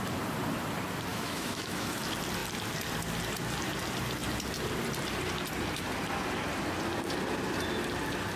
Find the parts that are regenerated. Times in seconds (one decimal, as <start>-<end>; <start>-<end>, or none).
1.1-2.0